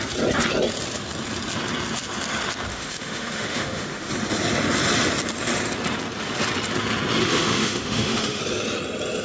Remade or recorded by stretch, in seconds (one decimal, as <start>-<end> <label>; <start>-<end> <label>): 0.0-2.7 recorded; 2.7-4.1 remade; 4.1-7.2 recorded; 7.2-8.4 remade; 8.4-9.2 recorded